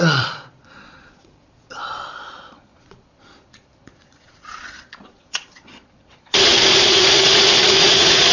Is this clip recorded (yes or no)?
no